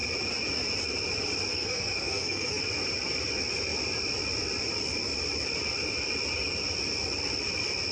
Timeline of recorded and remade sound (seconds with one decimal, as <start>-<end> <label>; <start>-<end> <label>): 0.0-1.5 recorded; 1.5-2.6 remade; 2.6-7.9 recorded